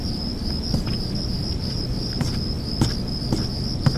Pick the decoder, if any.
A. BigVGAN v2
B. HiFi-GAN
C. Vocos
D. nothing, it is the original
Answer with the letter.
A